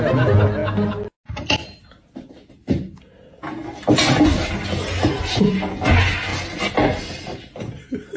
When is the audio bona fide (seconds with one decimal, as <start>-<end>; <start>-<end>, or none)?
0.0-8.2

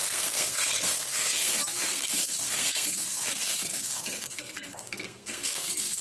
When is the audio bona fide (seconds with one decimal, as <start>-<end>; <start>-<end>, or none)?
none